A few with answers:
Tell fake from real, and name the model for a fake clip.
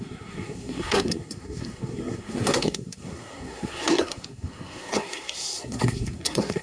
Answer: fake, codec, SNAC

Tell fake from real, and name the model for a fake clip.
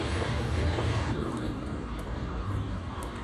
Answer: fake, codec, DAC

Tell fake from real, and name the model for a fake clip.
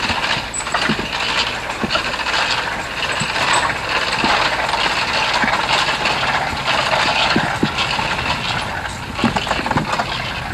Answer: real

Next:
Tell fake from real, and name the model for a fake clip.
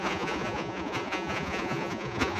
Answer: fake, vocoder, Vocos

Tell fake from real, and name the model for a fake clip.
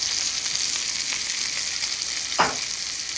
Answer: real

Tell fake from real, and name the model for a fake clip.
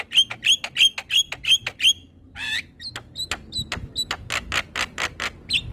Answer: real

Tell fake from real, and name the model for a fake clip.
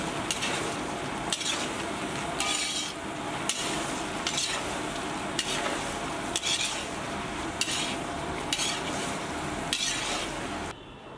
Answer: real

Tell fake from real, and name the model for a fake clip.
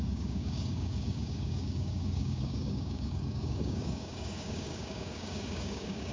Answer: fake, codec, DAC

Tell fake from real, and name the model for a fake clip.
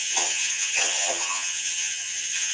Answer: fake, vocoder, HiFi-GAN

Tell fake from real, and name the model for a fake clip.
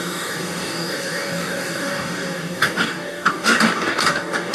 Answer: fake, codec, DAC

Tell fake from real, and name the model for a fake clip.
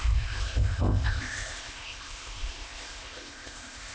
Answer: fake, codec, ZipCodec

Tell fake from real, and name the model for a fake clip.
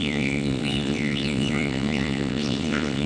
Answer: fake, vocoder, WaveNeXt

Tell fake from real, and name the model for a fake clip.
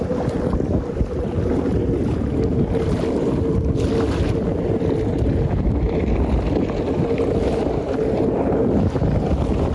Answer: real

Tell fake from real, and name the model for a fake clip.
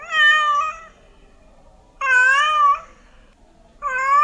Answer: real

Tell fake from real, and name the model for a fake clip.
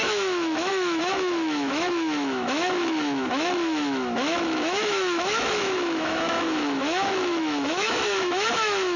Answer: fake, autoencoder, DAC-VAE